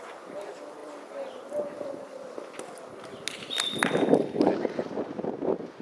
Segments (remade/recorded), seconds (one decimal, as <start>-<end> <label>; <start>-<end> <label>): 0.0-5.8 recorded